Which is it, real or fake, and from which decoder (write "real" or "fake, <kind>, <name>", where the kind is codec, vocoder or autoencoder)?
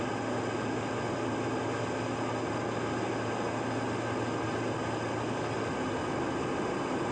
real